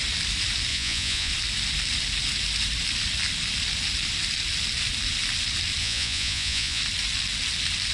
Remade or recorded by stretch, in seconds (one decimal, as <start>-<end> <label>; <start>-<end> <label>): 0.0-0.7 recorded; 0.7-1.3 remade; 1.3-5.8 recorded; 5.8-6.8 remade; 6.8-7.9 recorded